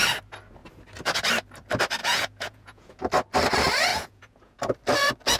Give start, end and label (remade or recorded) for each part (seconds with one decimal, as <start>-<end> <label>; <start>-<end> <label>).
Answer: 0.0-2.0 recorded; 2.0-3.0 remade; 3.0-3.9 recorded; 3.9-4.6 remade; 4.6-5.4 recorded